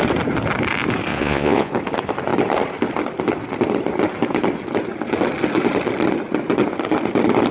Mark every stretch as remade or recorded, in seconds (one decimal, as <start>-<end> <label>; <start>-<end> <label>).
0.0-1.1 recorded; 1.1-1.7 remade; 1.7-7.5 recorded